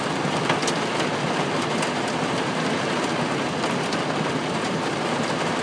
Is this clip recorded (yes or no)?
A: yes